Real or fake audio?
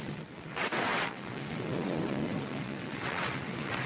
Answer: fake